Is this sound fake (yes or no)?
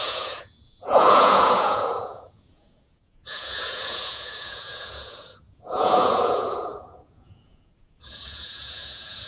yes